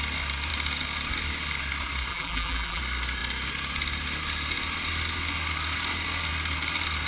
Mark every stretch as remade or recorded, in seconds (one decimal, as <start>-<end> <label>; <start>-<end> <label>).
0.0-2.1 recorded; 2.1-2.8 remade; 2.8-7.1 recorded